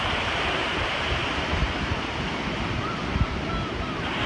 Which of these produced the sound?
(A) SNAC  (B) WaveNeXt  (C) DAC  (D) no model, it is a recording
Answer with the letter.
D